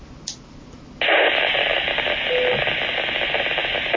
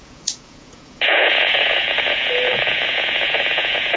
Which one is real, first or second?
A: first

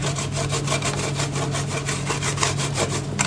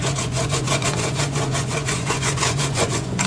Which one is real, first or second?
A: first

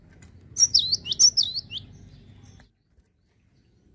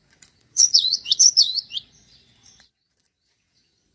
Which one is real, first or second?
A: first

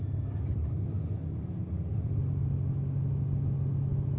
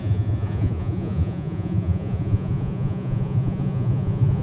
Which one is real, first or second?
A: first